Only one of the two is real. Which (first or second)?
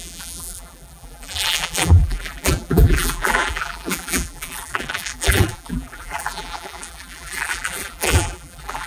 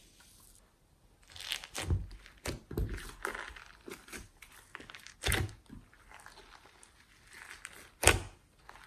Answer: second